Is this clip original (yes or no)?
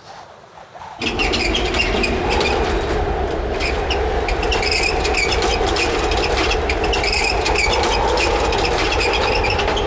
yes